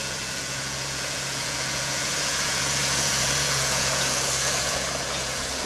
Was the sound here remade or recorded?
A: remade